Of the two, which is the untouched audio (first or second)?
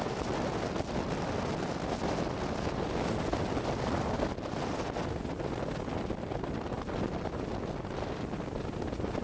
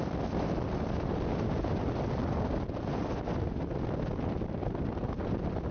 first